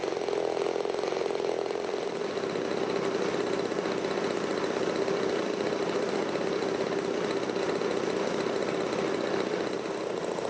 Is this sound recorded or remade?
recorded